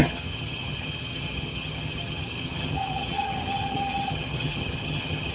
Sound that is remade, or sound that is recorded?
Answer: remade